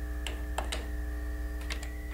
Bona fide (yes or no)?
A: yes